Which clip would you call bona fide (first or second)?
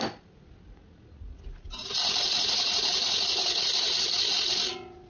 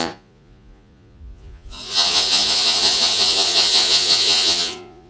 first